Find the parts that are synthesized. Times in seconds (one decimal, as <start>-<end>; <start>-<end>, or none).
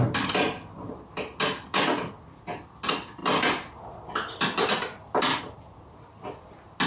none